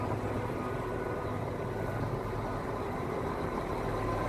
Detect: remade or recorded recorded